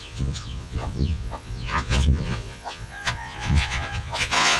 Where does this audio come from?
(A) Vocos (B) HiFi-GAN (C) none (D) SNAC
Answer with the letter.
A